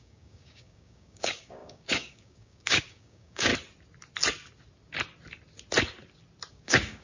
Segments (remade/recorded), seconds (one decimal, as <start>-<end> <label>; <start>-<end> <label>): 0.0-3.5 remade; 3.5-6.5 recorded; 6.5-7.0 remade